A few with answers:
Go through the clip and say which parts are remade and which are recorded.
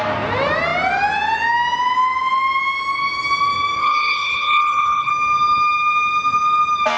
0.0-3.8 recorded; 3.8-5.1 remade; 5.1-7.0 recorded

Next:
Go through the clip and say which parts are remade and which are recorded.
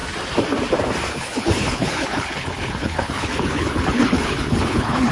0.0-1.1 recorded; 1.1-5.1 remade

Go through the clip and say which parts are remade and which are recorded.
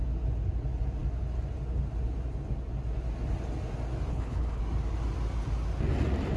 0.0-4.1 recorded; 4.1-4.6 remade; 4.6-6.4 recorded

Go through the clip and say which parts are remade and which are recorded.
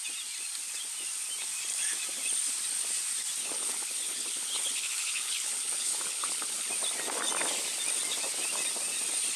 0.0-3.4 recorded; 3.4-6.7 remade; 6.7-9.4 recorded